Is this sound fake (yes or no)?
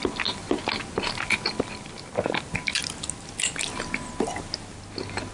no